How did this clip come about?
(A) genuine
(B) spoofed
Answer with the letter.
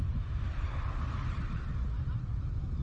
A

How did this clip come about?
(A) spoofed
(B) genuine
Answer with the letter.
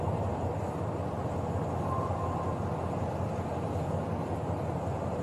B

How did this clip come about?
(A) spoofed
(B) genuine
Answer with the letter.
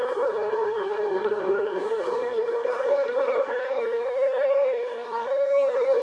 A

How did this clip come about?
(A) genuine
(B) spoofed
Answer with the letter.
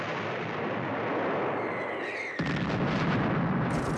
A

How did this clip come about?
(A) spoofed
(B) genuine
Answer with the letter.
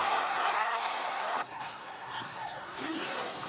A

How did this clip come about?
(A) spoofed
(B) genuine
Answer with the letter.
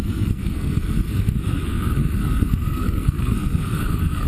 A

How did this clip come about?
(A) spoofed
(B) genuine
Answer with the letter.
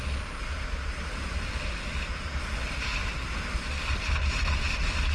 B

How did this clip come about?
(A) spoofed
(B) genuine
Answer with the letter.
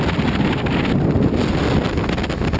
B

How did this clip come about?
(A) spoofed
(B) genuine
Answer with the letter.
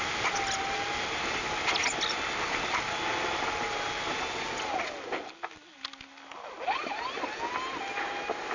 B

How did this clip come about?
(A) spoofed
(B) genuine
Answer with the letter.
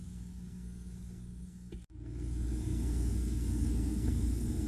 A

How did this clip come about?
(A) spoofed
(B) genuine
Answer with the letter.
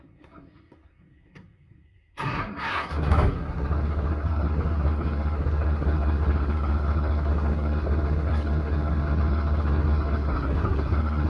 A